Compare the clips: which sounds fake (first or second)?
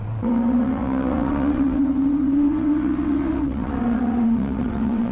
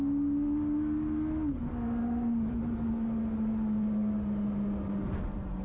first